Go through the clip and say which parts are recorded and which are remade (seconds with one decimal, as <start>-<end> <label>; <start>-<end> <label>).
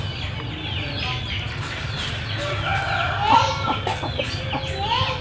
0.0-5.2 recorded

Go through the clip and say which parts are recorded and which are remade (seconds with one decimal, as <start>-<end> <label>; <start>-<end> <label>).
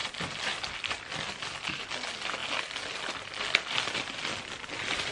0.0-5.1 recorded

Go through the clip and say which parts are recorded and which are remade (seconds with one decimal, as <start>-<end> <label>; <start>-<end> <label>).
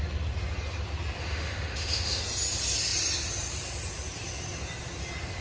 0.0-1.2 recorded; 1.2-2.2 remade; 2.2-5.4 recorded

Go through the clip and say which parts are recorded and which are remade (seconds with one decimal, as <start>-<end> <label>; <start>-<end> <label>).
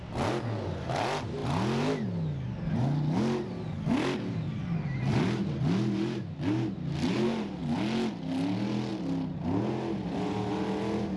0.0-11.2 recorded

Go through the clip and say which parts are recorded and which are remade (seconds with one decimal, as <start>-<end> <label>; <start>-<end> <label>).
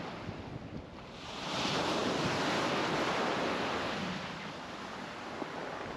0.0-6.0 recorded